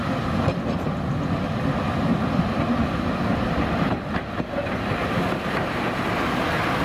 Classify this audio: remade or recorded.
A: recorded